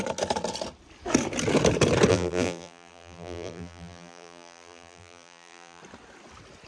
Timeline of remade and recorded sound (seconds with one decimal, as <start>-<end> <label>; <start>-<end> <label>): 0.0-2.1 recorded; 2.1-5.8 remade; 5.8-6.7 recorded